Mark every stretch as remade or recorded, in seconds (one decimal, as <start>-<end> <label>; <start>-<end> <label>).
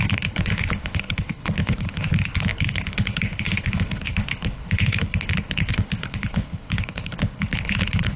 0.0-8.2 remade